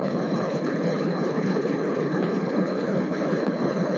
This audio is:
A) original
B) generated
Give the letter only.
B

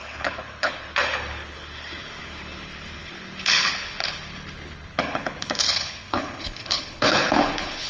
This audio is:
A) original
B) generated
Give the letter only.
B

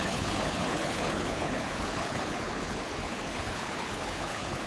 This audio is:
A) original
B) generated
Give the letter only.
B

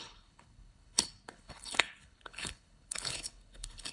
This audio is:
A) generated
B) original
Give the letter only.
A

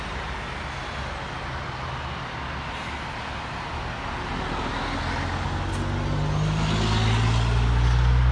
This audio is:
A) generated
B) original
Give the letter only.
B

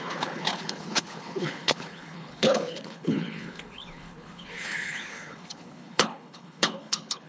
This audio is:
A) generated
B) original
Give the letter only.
A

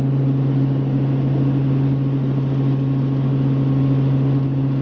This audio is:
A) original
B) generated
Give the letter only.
A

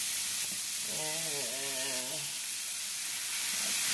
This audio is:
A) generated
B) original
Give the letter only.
B